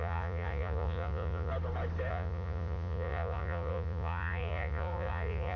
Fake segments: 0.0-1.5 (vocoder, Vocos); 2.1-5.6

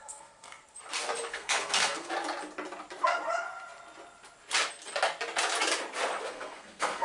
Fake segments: 0.0-0.6 (codec, SNAC); 1.3-2.1; 6.3-7.0

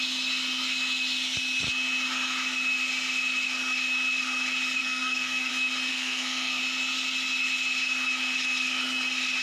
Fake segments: 4.8-5.5 (codec, SNAC); 5.9-6.6

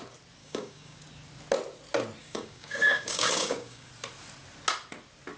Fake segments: 0.4-1.0 (codec, DAC); 2.2-3.9

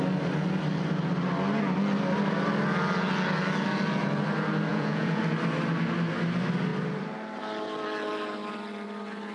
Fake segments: 4.7-5.2 (vocoder, Vocos)

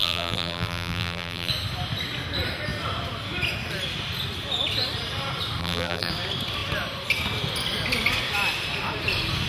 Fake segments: 0.0-1.5 (vocoder, BigVGAN v2); 5.6-6.1

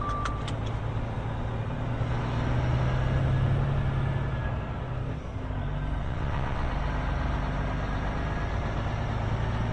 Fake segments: 6.0-6.7 (vocoder, WaveNeXt)

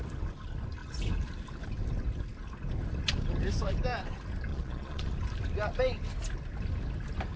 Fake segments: 4.5-5.1 (vocoder, Vocos)